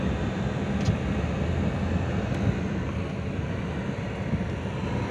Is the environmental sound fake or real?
real